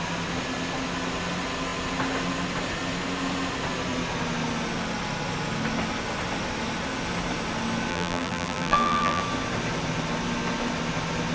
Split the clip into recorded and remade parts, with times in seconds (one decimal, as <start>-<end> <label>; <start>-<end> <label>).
0.0-7.9 recorded; 7.9-9.2 remade; 9.2-11.3 recorded